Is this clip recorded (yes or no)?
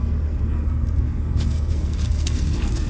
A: no